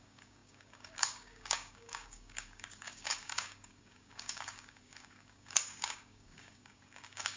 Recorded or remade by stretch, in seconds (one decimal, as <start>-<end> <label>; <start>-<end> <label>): 0.0-7.4 remade